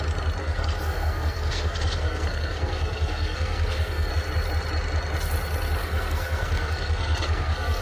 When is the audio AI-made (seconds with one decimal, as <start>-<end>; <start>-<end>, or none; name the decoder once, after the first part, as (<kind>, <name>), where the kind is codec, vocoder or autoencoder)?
0.4-4.1 (codec, SNAC); 5.8-7.8